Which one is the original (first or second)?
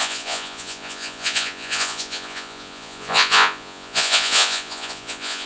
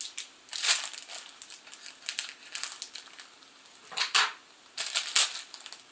second